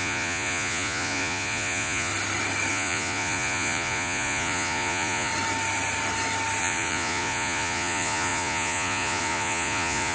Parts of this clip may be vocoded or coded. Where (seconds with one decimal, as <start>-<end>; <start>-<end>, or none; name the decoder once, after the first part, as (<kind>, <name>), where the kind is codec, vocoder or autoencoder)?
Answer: 0.0-2.1 (vocoder, Vocos); 2.7-5.3; 6.6-10.1